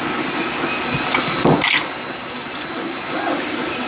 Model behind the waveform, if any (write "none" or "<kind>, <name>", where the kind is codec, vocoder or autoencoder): none